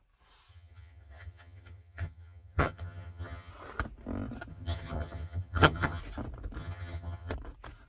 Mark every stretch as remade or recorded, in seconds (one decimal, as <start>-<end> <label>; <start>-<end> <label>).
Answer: 0.0-0.5 recorded; 0.5-3.5 remade; 3.5-4.5 recorded; 4.5-6.0 remade; 6.0-6.6 recorded; 6.6-7.3 remade; 7.3-7.9 recorded